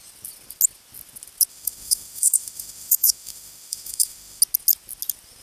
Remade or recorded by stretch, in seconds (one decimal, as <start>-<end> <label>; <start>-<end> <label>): 0.0-1.5 recorded; 1.5-4.4 remade; 4.4-5.4 recorded